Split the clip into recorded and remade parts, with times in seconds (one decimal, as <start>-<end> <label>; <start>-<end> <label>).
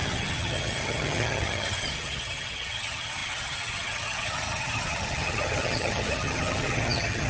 0.0-7.3 remade